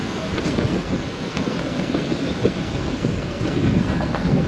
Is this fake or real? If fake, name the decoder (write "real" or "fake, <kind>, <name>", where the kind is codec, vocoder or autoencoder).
fake, codec, SNAC